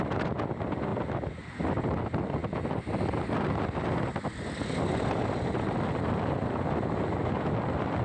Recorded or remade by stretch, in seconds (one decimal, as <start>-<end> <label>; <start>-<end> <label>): 0.0-8.0 recorded